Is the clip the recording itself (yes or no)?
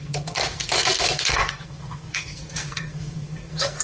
no